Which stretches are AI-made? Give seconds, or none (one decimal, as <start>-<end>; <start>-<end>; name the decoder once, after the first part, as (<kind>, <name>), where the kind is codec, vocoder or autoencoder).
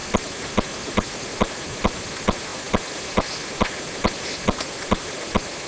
none